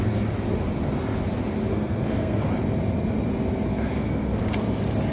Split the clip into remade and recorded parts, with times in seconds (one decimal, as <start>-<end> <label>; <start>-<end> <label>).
0.0-1.7 recorded; 1.7-2.4 remade; 2.4-3.7 recorded; 3.7-4.4 remade; 4.4-5.1 recorded